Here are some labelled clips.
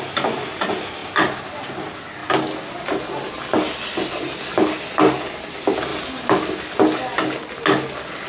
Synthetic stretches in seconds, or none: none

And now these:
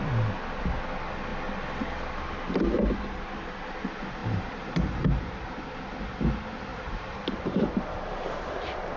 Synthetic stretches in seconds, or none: 4.2-5.2 (vocoder, BigVGAN v2); 6.7-9.0

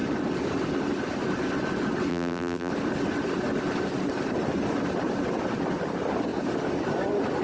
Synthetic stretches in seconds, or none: 2.1-2.7 (vocoder, BigVGAN v2)

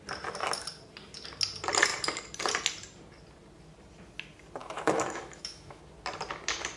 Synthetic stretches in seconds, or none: 4.6-5.8 (autoencoder, DAC-VAE)

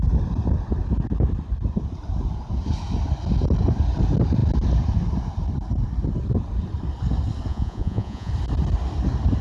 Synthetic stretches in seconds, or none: 7.5-8.3 (vocoder, Vocos)

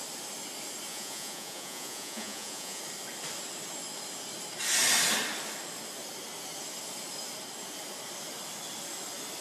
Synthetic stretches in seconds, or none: 0.9-2.8 (vocoder, Vocos)